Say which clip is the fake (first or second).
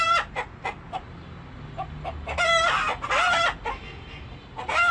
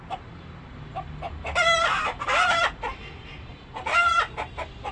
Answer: second